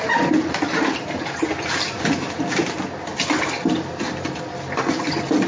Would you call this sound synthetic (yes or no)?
no